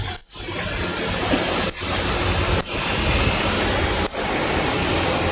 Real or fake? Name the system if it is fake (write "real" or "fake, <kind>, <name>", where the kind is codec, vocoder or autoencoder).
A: real